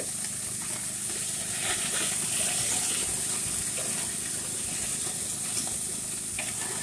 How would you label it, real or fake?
real